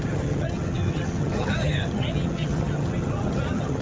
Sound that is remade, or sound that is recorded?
remade